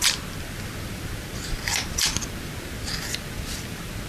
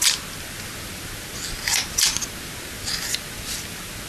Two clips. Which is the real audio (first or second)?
second